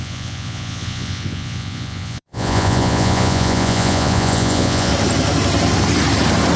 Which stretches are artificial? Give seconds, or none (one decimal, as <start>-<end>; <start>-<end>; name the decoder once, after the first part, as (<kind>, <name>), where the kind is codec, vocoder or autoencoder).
0.0-4.9 (vocoder, Vocos)